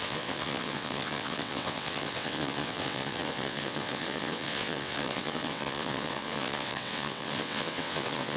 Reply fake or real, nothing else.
fake